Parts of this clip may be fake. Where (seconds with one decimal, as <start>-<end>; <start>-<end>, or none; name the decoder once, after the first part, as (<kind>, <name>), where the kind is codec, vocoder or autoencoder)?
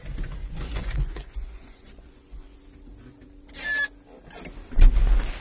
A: 0.4-2.6 (vocoder, Vocos)